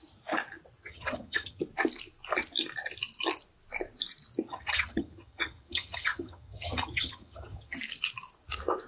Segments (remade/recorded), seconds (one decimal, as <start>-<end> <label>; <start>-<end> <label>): 0.0-0.8 recorded; 0.8-1.6 remade; 1.6-4.5 recorded; 4.5-7.8 remade; 7.8-8.9 recorded